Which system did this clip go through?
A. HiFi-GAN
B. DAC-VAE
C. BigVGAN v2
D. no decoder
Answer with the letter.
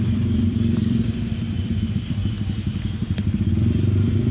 C